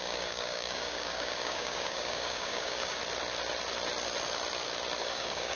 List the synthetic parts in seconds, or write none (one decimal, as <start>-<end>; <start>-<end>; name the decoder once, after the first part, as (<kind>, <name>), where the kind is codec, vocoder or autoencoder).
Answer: 0.0-3.0 (codec, DAC); 5.0-5.6